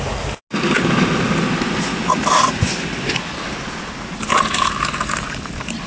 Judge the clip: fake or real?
real